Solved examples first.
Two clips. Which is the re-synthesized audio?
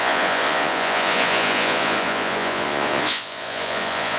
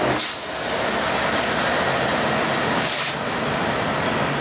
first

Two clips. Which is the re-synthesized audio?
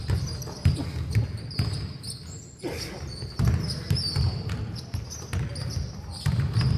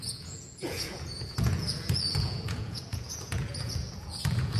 second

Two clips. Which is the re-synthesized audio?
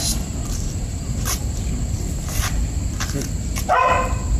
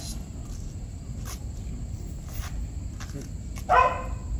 first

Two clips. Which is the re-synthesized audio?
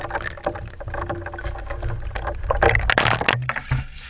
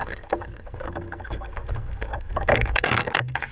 second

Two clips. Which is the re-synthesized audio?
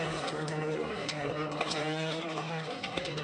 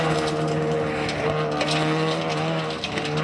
first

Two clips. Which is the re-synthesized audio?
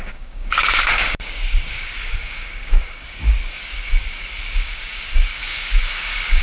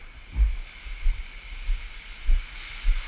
first